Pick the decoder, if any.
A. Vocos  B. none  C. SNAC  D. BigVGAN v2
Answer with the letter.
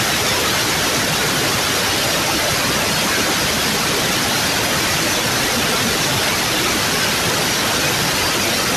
B